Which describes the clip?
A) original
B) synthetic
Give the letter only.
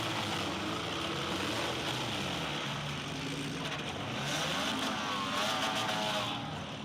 A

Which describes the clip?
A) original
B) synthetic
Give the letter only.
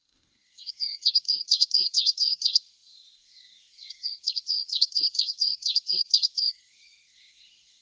B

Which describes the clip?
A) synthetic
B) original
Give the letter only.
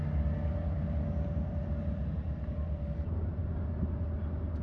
B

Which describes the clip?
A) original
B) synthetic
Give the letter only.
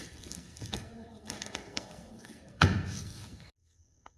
B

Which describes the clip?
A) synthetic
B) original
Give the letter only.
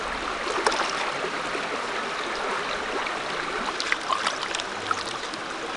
B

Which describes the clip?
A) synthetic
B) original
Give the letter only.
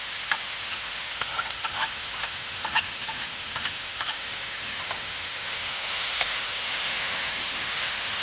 A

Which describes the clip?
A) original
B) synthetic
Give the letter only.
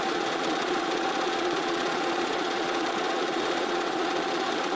B